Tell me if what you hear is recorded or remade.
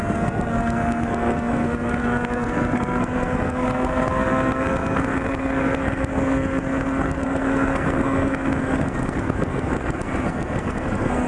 remade